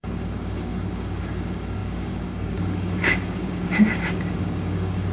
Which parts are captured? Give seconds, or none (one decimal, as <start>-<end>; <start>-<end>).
none